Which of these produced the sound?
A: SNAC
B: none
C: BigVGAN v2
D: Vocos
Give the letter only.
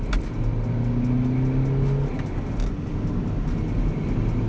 B